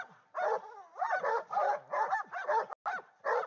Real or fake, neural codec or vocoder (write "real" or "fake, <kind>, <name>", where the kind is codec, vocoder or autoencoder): real